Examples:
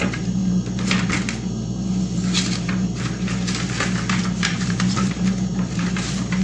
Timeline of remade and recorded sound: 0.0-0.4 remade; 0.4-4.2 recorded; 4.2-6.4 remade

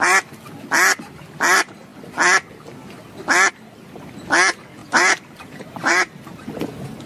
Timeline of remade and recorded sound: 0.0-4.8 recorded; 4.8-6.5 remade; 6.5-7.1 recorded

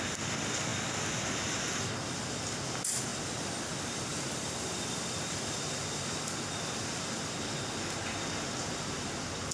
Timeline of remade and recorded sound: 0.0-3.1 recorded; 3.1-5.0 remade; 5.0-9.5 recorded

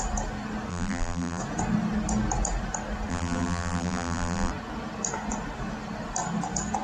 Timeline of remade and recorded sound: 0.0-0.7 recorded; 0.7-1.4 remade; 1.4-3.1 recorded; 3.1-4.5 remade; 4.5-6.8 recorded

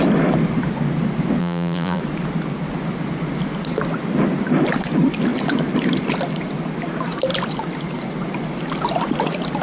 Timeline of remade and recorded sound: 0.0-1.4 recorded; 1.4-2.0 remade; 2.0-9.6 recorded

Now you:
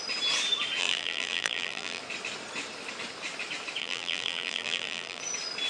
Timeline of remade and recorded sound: 0.0-0.8 recorded; 0.8-2.0 remade; 2.0-3.8 recorded; 3.8-5.2 remade; 5.2-5.7 recorded